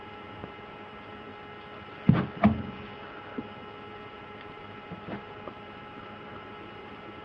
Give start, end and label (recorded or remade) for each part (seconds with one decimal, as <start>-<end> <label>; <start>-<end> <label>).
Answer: 0.0-1.3 remade; 1.3-3.9 recorded; 3.9-7.2 remade